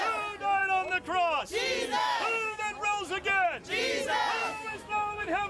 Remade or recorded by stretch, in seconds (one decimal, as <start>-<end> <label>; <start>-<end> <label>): 0.0-2.0 recorded; 2.0-2.6 remade; 2.6-4.4 recorded; 4.4-5.5 remade